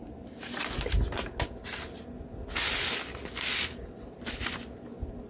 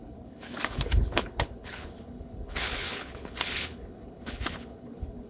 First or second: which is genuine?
first